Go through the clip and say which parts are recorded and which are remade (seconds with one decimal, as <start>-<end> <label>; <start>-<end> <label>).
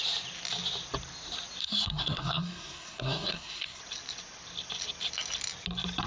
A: 0.0-1.6 recorded; 1.6-3.8 remade; 3.8-6.1 recorded